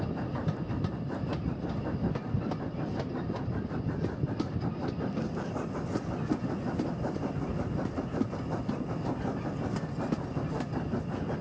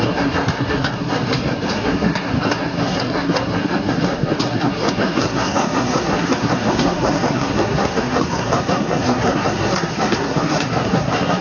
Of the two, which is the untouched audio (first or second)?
first